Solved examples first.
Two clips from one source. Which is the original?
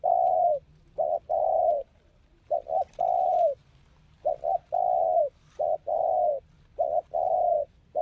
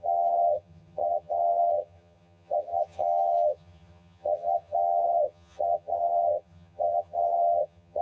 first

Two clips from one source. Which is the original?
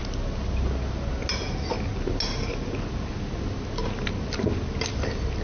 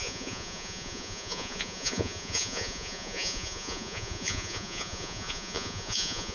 first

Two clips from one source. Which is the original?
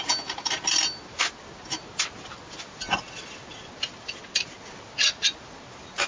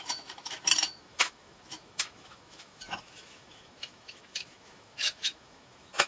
first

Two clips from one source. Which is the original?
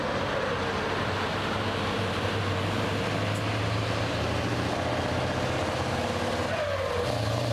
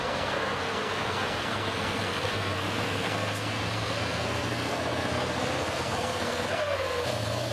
first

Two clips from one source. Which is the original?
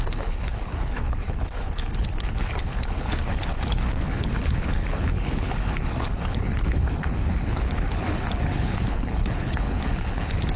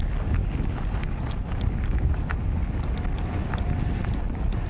second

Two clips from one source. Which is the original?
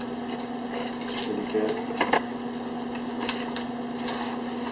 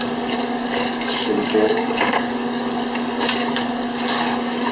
first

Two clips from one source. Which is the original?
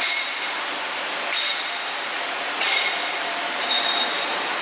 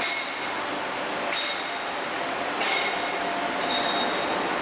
second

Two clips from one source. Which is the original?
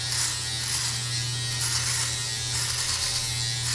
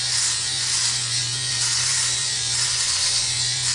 first